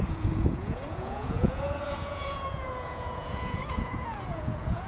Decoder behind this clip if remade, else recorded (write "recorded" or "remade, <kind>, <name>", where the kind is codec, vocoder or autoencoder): remade, vocoder, Vocos